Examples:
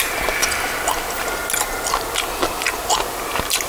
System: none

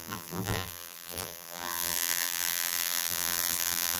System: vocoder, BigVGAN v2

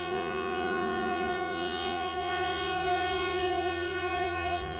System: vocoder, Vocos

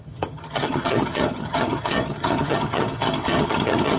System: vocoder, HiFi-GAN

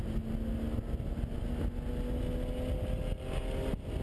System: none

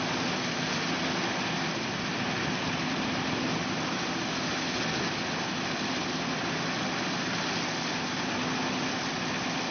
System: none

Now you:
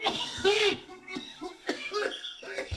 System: codec, SNAC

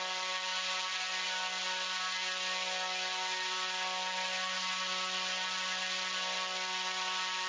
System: none